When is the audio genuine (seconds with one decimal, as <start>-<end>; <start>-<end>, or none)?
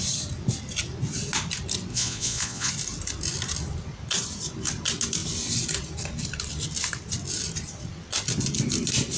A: 0.0-1.9; 2.7-9.2